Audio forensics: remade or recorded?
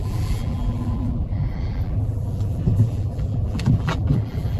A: remade